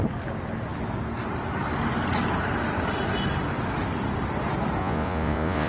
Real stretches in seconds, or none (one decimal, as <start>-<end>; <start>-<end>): 0.0-4.8